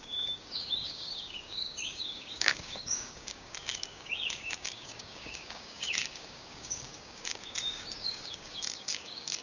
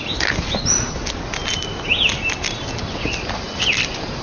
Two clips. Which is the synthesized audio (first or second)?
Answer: first